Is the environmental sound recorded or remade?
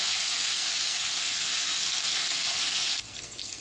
remade